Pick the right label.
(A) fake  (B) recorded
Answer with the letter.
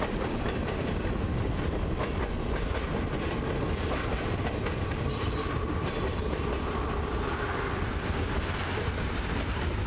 B